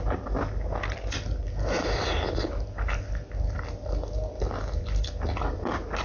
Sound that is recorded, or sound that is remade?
recorded